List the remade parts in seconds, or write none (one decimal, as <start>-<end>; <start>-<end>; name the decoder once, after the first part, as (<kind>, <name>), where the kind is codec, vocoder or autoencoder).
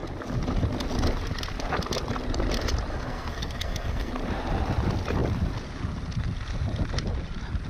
2.9-4.1 (codec, SNAC)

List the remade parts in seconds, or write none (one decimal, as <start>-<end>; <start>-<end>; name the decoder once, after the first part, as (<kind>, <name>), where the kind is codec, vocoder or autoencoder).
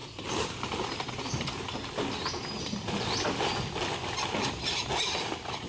none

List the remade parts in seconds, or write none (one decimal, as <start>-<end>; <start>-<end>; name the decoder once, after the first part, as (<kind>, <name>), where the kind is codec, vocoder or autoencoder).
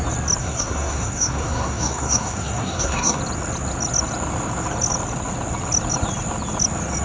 0.4-3.2 (codec, SNAC)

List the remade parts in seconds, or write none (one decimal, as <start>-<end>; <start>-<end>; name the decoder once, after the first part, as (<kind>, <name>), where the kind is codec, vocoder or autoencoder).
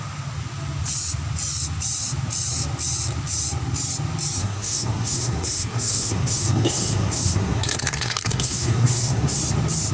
4.4-9.4 (codec, SNAC)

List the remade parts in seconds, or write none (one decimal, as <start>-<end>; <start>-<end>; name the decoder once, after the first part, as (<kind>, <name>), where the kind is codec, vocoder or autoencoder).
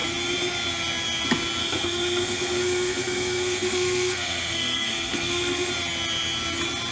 1.6-5.7 (codec, SNAC)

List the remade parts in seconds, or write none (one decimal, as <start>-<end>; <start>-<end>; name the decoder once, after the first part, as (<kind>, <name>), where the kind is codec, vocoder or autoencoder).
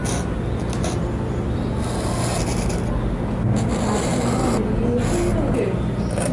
none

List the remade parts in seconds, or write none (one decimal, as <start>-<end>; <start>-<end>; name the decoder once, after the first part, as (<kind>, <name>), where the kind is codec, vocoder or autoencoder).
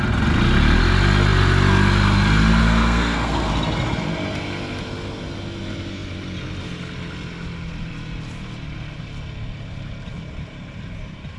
2.6-3.5 (codec, SNAC)